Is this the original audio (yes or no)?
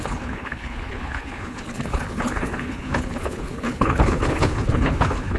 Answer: no